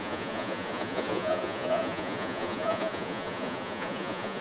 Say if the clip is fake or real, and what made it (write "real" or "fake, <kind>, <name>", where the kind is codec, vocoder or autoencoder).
fake, vocoder, Vocos